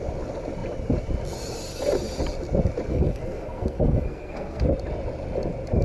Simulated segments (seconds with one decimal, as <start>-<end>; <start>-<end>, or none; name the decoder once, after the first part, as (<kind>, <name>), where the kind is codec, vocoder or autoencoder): 2.9-4.7 (codec, SNAC)